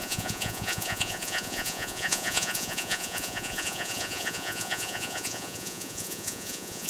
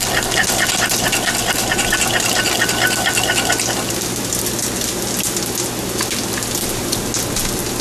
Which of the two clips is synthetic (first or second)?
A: first